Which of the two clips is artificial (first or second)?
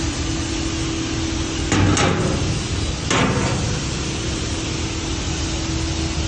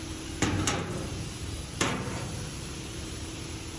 second